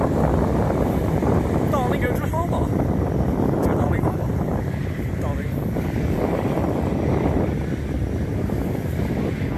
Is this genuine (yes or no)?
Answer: no